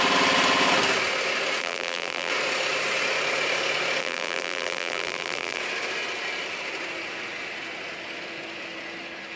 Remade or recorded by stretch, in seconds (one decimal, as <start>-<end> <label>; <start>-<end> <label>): 0.0-1.6 recorded; 1.6-2.3 remade; 2.3-4.0 recorded; 4.0-5.6 remade; 5.6-9.4 recorded